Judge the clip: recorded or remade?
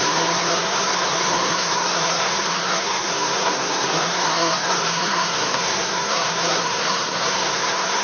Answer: remade